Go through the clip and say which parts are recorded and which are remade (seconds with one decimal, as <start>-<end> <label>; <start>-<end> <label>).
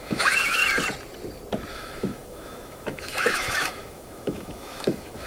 0.0-0.6 remade; 0.6-1.7 recorded; 1.7-5.3 remade